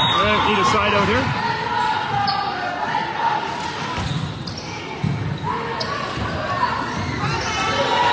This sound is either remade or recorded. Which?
recorded